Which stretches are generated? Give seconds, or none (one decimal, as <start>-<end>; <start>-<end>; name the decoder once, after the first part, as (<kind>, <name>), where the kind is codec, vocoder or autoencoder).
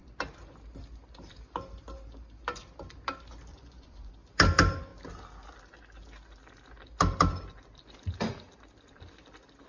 3.5-4.1 (vocoder, Vocos)